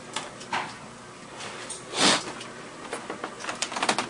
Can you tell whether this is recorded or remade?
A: recorded